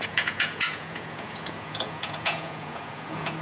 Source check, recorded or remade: remade